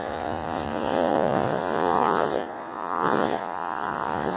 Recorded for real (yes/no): no